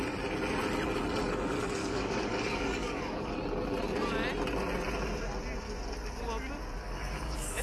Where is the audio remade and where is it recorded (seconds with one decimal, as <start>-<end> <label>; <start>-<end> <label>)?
0.0-1.8 recorded; 1.8-3.3 remade; 3.3-6.8 recorded; 6.8-7.6 remade